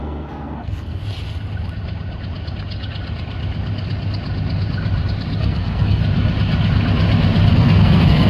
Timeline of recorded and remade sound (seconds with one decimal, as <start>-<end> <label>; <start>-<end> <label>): 0.0-1.0 remade; 1.0-5.4 recorded; 5.4-6.0 remade; 6.0-7.5 recorded; 7.5-8.3 remade